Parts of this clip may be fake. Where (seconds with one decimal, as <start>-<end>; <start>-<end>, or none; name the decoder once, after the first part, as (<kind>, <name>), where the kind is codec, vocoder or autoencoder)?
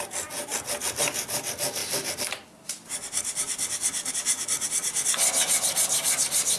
none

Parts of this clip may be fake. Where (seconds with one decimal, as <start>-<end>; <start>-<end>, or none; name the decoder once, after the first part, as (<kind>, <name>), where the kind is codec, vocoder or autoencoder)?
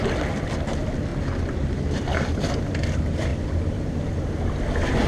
none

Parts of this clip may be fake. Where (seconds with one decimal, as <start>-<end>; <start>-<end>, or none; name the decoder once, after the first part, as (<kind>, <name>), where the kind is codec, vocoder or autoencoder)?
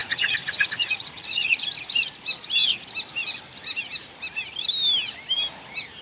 0.0-1.7 (vocoder, Vocos)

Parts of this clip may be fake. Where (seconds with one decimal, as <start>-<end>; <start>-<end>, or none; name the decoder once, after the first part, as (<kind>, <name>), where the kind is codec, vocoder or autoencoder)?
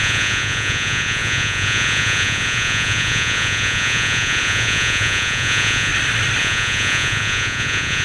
0.0-5.9 (vocoder, Vocos); 6.4-8.0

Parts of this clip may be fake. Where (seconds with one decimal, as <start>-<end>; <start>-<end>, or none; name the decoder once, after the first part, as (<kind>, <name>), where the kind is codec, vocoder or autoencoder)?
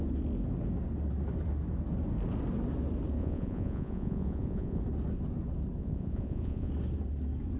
3.2-4.8 (vocoder, Vocos); 5.8-6.7